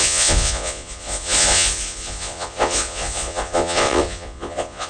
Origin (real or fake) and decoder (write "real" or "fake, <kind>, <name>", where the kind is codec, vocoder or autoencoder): fake, vocoder, Vocos